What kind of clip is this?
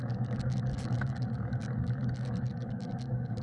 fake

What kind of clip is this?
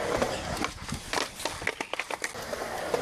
real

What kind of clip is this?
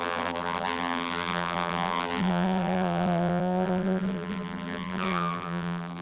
fake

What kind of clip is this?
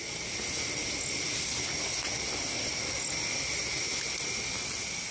real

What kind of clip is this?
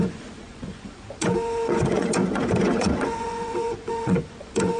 fake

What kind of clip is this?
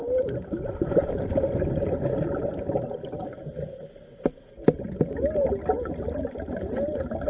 real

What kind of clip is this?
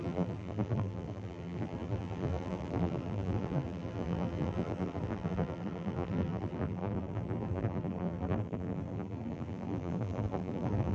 fake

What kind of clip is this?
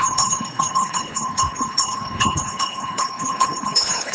fake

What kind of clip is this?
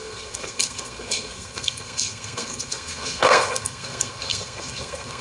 fake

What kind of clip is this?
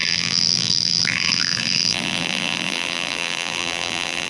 fake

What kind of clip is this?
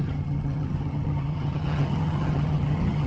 fake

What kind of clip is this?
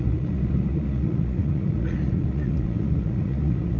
fake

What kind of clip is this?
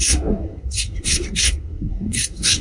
fake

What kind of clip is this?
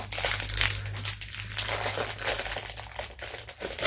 real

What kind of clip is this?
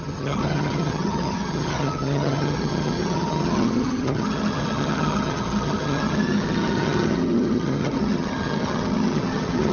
fake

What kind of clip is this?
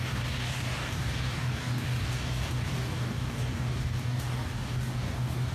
fake